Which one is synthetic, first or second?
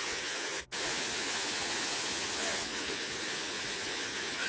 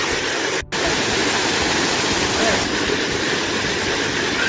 first